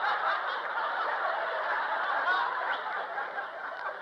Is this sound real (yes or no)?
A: no